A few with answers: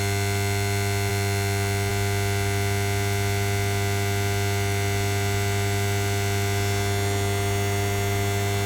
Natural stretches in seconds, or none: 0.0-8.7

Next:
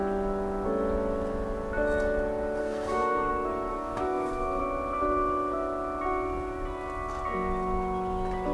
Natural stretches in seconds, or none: 0.0-2.6; 3.3-3.7; 4.6-8.5

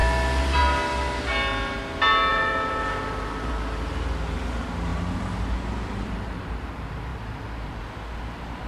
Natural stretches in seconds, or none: 0.0-2.3; 3.5-4.9; 6.6-7.1; 7.8-8.7

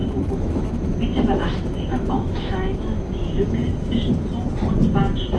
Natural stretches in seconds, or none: 1.0-1.4; 4.1-5.4

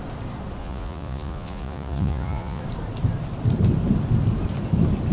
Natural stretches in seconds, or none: 0.0-0.6; 2.6-5.1

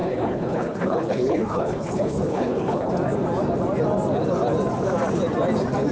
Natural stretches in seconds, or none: 2.9-5.9

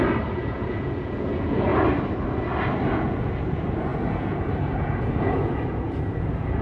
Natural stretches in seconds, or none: 1.7-2.9